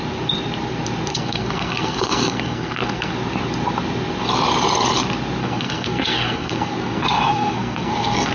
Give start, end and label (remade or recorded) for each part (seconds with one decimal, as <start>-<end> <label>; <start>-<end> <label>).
0.0-1.1 recorded; 1.1-3.1 remade; 3.1-5.4 recorded; 5.4-8.3 remade